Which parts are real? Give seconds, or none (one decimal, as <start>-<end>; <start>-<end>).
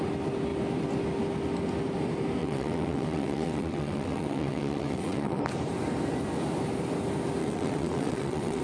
0.0-2.4; 5.4-7.4